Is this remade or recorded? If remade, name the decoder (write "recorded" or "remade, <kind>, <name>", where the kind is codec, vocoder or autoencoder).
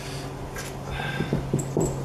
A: recorded